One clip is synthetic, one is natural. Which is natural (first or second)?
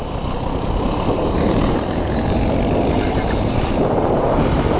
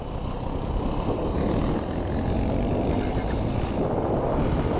second